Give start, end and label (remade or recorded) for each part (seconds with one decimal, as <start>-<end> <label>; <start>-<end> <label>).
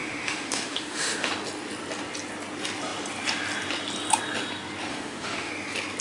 0.0-1.3 remade; 1.3-4.9 recorded; 4.9-5.5 remade; 5.5-6.0 recorded